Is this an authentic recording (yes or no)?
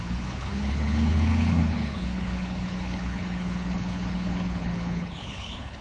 no